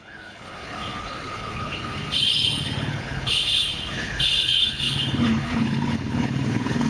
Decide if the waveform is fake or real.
fake